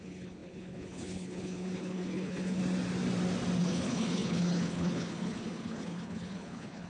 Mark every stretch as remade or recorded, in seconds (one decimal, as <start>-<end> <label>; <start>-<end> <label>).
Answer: 0.0-2.6 remade; 2.6-3.6 recorded; 3.6-6.9 remade